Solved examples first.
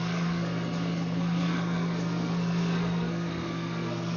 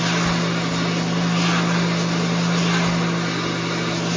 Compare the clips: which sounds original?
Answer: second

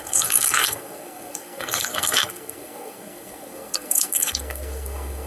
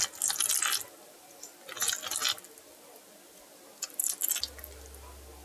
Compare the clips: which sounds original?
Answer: second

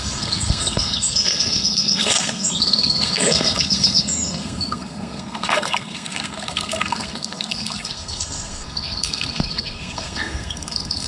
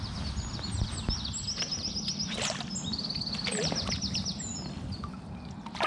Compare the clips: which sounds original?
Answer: second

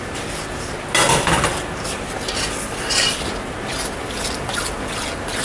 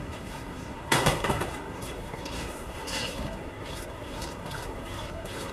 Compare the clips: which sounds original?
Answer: first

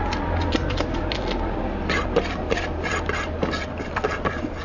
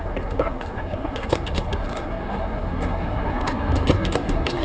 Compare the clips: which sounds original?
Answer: first